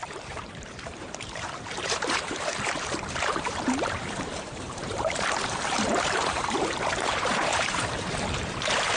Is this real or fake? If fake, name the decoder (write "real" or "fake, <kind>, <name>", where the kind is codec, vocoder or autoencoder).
fake, vocoder, BigVGAN v2